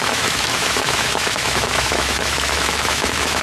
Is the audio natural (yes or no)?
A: no